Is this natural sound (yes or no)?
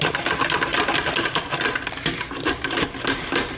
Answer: yes